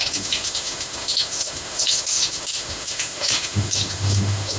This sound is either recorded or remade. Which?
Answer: remade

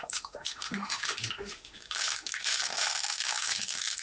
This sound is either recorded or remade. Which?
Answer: remade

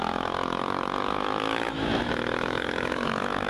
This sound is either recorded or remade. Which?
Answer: remade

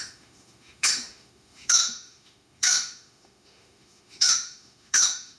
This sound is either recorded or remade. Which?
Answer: remade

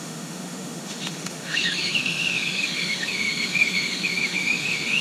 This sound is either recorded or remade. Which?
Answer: remade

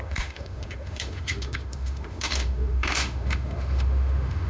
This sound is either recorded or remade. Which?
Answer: remade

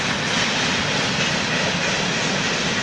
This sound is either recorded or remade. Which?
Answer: recorded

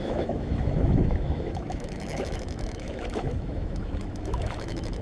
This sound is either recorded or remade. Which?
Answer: remade